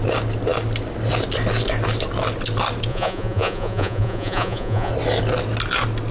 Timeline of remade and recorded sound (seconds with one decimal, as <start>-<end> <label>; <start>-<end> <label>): 0.0-2.9 recorded; 2.9-4.9 remade; 4.9-6.1 recorded